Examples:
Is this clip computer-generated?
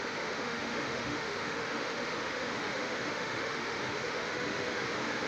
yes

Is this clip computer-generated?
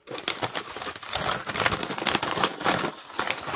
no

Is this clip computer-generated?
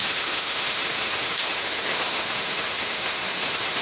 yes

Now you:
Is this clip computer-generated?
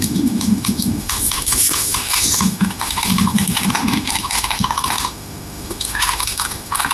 yes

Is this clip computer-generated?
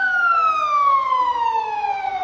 yes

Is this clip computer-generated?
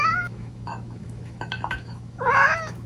yes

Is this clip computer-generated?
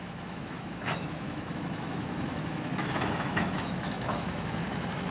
yes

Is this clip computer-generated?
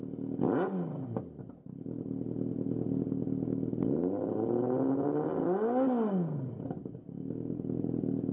no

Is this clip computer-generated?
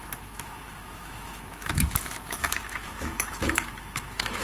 yes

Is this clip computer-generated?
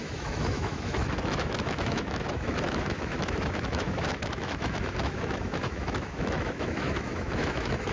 yes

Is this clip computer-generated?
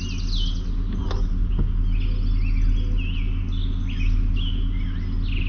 no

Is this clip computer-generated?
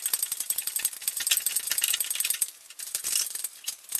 no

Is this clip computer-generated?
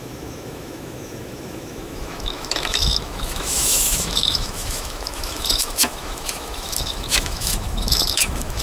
yes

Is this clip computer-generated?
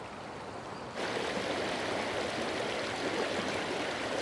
no